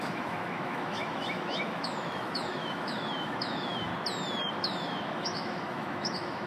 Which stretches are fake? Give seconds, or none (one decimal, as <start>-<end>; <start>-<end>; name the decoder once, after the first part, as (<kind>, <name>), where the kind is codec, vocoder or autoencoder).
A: 0.0-3.9 (autoencoder, DAC-VAE); 4.5-6.5